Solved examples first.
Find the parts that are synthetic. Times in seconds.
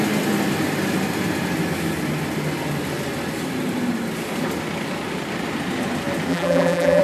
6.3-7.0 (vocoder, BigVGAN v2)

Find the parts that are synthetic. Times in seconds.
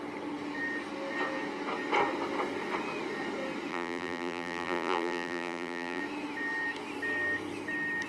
3.7-6.0 (vocoder, BigVGAN v2)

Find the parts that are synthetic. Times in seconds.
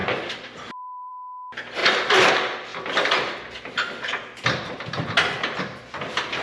0.0-1.1 (vocoder, BigVGAN v2)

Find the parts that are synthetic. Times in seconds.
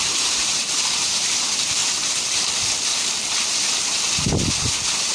0.0-1.8 (vocoder, BigVGAN v2)